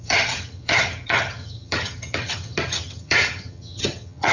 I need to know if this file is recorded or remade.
remade